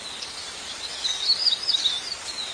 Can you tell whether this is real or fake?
real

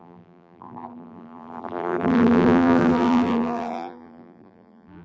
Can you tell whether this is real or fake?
fake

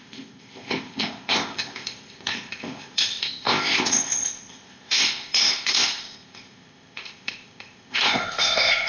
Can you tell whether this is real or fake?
fake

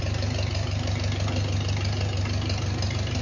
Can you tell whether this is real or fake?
real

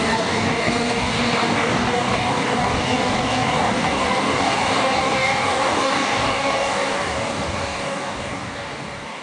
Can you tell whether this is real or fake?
fake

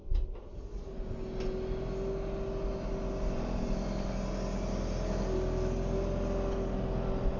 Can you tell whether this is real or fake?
real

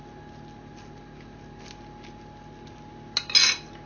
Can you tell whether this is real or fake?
real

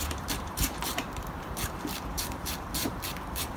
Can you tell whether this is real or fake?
fake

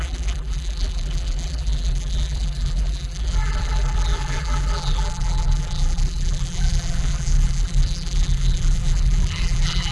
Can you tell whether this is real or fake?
fake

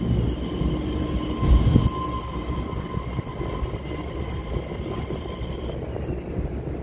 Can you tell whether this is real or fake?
real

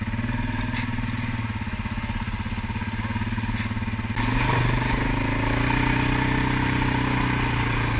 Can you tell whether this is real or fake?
real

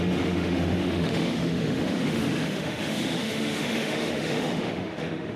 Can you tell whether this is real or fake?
fake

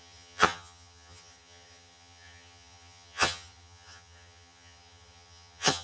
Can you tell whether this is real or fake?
fake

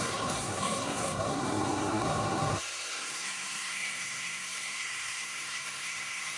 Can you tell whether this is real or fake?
fake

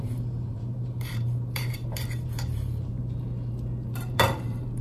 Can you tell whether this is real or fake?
fake